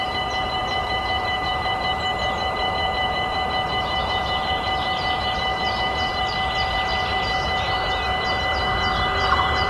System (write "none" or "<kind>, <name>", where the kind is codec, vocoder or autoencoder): vocoder, BigVGAN v2